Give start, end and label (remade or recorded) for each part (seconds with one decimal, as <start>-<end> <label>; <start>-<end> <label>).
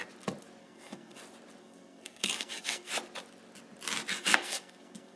0.0-0.6 recorded; 0.6-1.2 remade; 1.2-1.6 recorded; 1.6-2.9 remade; 2.9-4.1 recorded; 4.1-5.2 remade